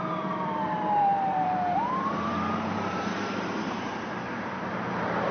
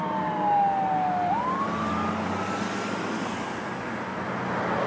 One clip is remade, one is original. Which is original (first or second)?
second